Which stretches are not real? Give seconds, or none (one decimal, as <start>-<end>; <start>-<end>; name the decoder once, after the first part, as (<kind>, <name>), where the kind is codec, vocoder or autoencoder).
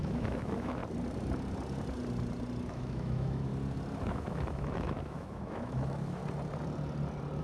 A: 0.0-0.8 (autoencoder, DAC-VAE); 2.7-3.5; 4.1-6.2